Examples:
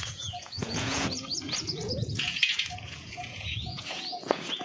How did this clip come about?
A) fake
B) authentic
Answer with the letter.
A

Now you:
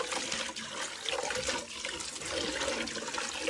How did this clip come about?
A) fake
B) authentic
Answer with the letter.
B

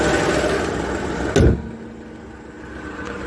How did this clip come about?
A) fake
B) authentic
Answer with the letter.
B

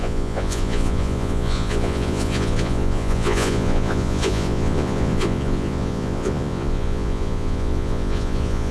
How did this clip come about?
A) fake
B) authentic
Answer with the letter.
A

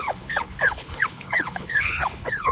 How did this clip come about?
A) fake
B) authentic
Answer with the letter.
A